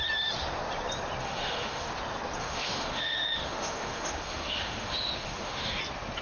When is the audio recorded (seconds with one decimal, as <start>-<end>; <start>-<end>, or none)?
0.0-1.2; 1.9-2.4; 5.8-6.2